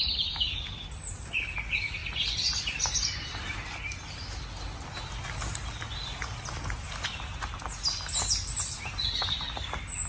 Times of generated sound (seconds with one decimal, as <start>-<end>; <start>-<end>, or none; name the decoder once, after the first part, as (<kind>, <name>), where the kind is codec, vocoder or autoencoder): none